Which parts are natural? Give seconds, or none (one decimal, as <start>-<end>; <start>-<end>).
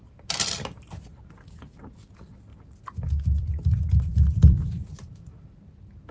0.0-4.1; 5.1-6.1